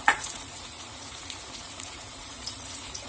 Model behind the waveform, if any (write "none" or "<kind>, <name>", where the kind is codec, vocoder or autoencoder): vocoder, Vocos